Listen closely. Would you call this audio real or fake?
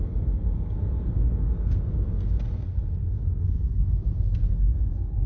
fake